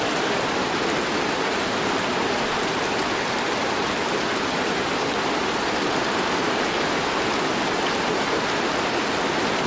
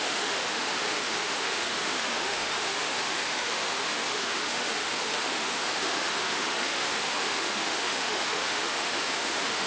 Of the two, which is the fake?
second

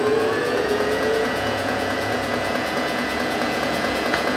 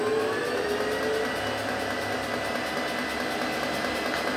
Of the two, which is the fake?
first